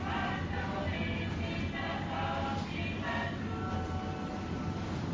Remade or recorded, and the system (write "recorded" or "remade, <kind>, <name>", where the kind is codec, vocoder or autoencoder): recorded